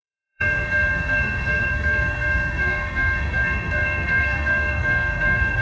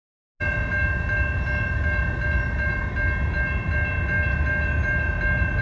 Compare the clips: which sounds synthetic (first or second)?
first